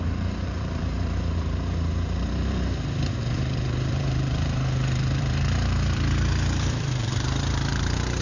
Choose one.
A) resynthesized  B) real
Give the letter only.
A